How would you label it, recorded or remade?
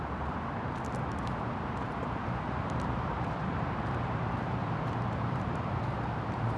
remade